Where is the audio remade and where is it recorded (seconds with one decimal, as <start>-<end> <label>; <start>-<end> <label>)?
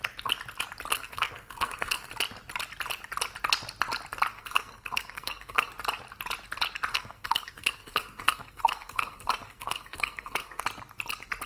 0.0-0.9 recorded; 0.9-2.1 remade; 2.1-4.3 recorded; 4.3-5.7 remade; 5.7-6.9 recorded; 6.9-10.6 remade; 10.6-11.5 recorded